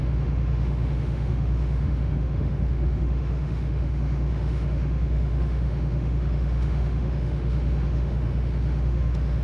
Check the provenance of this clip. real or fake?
fake